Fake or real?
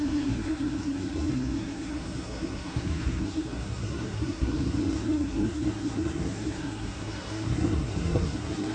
fake